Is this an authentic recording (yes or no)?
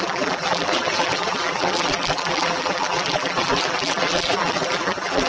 no